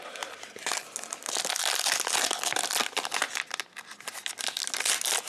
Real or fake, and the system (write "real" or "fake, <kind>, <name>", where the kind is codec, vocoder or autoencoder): real